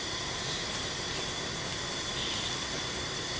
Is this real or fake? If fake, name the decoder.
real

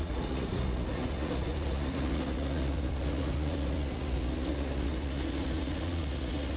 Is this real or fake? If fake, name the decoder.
fake, vocoder, Vocos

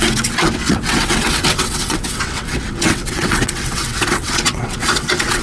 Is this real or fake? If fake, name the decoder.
fake, vocoder, WaveNeXt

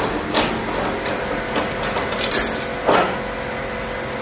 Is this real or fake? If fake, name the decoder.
real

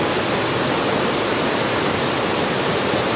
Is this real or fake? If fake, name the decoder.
real